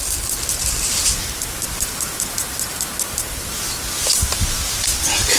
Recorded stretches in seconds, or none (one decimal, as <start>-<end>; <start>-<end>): 0.0-5.4